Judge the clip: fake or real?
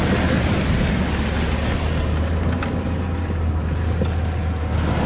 real